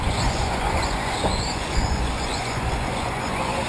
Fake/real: fake